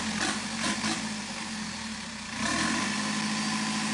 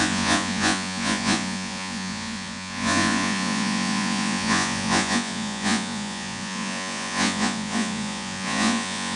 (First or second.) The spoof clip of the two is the second